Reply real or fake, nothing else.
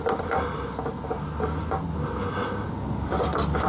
real